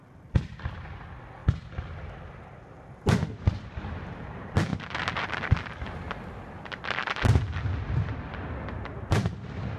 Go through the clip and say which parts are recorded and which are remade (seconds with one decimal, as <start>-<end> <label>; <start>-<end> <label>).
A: 0.0-9.8 recorded